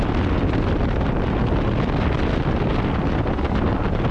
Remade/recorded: recorded